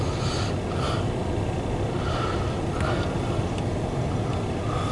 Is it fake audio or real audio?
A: real